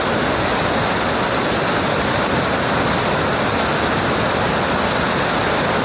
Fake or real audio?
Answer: real